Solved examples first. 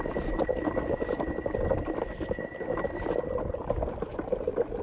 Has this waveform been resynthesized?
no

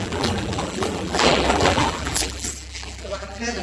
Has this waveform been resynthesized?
yes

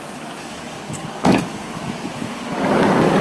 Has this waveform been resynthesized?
yes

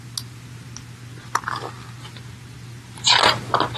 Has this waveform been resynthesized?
no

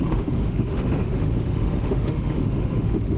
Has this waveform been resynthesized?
yes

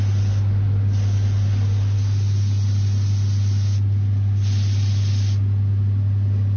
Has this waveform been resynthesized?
no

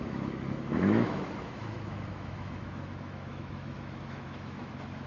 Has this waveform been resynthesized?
yes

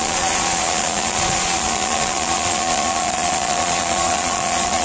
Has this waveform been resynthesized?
yes